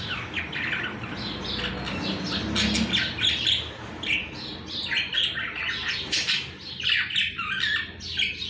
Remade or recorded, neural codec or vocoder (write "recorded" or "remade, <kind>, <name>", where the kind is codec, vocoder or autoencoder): recorded